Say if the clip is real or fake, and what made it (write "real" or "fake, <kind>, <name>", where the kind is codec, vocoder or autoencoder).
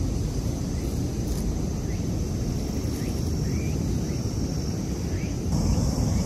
real